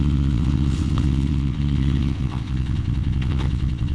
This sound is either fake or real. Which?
fake